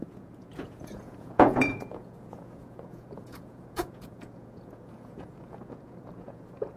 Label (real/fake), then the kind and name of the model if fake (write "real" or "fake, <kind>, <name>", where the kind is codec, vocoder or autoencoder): fake, vocoder, Vocos